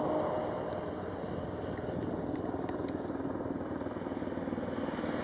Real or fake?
real